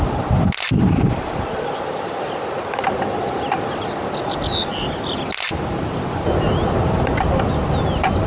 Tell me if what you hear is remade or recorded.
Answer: recorded